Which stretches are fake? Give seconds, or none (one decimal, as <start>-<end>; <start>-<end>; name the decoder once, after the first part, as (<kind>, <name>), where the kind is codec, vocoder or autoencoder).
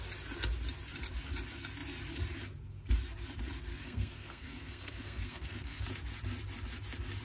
3.7-5.8 (codec, SNAC)